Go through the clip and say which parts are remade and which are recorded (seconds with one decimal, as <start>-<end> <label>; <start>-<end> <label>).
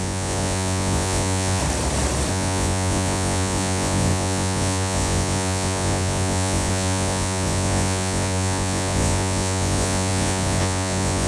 0.0-1.6 remade; 1.6-2.3 recorded; 2.3-11.3 remade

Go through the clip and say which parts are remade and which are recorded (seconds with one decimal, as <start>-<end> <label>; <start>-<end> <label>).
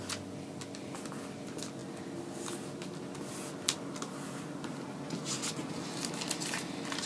0.0-7.1 recorded